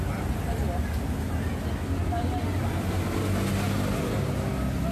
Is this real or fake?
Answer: real